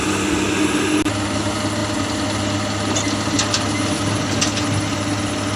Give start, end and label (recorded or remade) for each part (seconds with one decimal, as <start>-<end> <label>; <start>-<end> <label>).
0.0-5.6 recorded